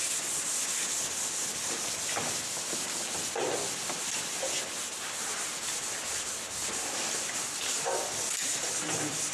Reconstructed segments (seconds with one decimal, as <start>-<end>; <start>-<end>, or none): 6.6-8.6